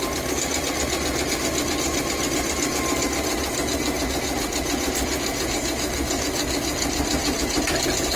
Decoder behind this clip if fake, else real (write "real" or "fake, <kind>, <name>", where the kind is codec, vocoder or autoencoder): real